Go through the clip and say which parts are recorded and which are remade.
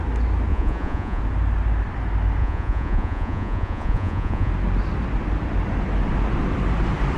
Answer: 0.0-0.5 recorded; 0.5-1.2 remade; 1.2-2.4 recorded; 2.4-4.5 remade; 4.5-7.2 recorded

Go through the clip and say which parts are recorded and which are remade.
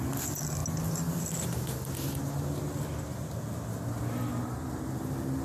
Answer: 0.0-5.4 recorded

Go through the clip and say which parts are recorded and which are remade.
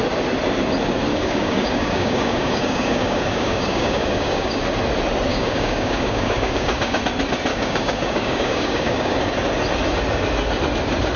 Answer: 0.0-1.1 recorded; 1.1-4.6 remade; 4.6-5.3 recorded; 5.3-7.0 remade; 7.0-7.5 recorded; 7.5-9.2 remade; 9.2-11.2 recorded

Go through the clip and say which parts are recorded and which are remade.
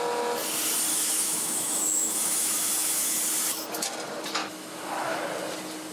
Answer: 0.0-0.9 recorded; 0.9-3.2 remade; 3.2-4.4 recorded; 4.4-5.2 remade; 5.2-5.9 recorded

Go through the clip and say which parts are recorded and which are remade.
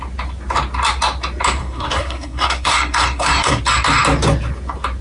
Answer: 0.0-1.6 recorded; 1.6-3.6 remade; 3.6-5.0 recorded